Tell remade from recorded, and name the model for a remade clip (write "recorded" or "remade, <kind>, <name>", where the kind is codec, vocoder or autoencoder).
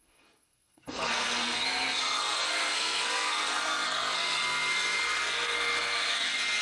remade, codec, SNAC